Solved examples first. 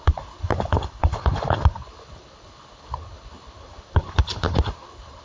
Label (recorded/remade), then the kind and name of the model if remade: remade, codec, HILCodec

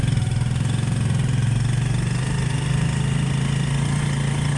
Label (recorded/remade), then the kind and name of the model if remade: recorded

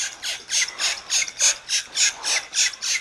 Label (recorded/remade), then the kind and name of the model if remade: recorded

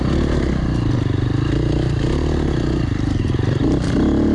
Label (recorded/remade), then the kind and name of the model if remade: recorded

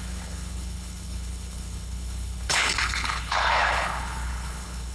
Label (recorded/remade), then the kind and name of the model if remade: remade, codec, HILCodec